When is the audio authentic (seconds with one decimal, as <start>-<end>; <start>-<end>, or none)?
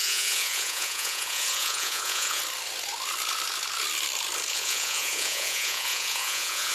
2.4-4.5